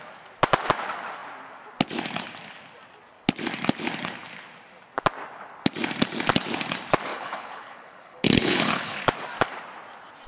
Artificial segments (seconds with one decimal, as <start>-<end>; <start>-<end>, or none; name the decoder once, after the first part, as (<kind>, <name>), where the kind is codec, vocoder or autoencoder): 7.1-9.0 (codec, HILCodec)